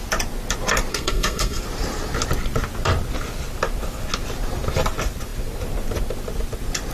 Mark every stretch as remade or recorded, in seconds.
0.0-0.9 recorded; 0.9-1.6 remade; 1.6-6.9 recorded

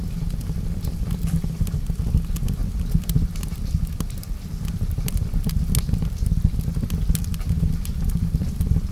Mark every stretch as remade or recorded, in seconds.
0.0-2.6 remade; 2.6-7.8 recorded; 7.8-8.9 remade

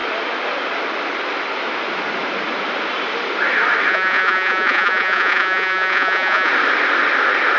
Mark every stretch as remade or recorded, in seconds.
0.0-3.9 recorded; 3.9-6.5 remade; 6.5-7.6 recorded